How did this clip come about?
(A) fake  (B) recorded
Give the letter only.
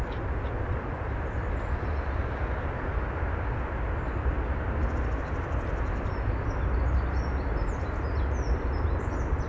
B